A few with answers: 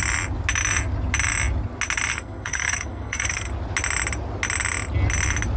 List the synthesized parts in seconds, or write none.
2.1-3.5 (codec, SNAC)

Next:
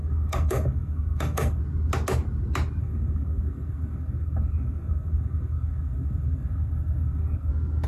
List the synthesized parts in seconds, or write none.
0.0-1.6 (codec, SNAC); 2.8-7.5

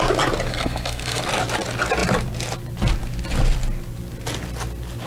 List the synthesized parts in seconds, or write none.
0.5-1.2 (codec, SNAC)